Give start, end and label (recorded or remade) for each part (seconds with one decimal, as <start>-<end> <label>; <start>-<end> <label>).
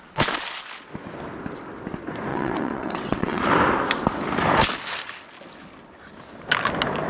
0.0-2.3 recorded; 2.3-3.4 remade; 3.4-7.1 recorded